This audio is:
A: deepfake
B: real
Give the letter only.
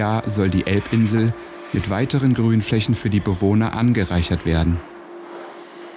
B